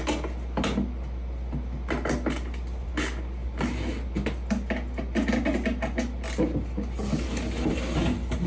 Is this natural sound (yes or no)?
yes